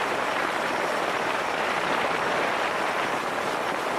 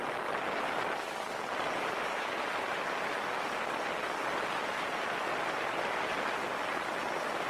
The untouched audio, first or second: second